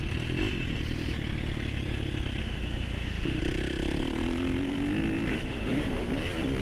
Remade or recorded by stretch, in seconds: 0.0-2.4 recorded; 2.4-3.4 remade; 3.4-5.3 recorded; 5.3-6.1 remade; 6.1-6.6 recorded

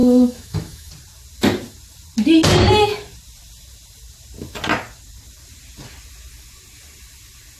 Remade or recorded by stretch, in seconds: 0.0-0.9 remade; 0.9-7.6 recorded

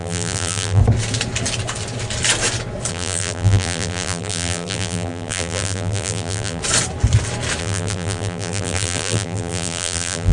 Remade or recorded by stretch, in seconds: 0.0-0.8 remade; 0.8-2.9 recorded; 2.9-6.6 remade; 6.6-7.6 recorded; 7.6-10.3 remade

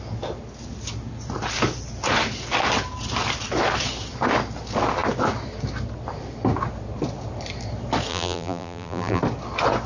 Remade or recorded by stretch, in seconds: 0.0-8.1 recorded; 8.1-9.2 remade; 9.2-9.9 recorded

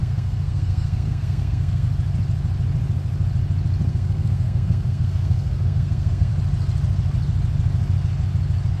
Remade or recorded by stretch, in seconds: 0.0-1.9 remade; 1.9-3.9 recorded; 3.9-6.3 remade; 6.3-8.8 recorded

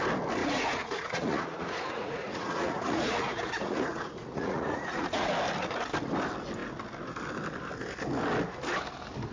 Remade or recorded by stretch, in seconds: 0.0-0.4 recorded; 0.4-5.3 remade; 5.3-9.3 recorded